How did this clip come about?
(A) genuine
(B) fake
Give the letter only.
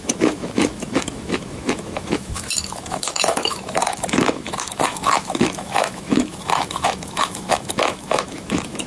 B